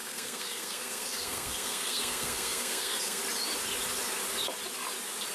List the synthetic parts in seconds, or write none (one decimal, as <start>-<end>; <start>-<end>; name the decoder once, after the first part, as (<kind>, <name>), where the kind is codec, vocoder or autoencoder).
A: 0.0-3.2 (codec, SNAC)